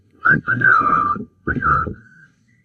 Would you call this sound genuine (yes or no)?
no